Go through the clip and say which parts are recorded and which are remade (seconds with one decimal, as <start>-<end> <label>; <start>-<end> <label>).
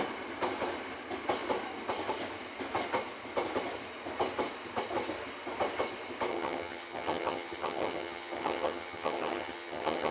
0.0-6.3 recorded; 6.3-10.1 remade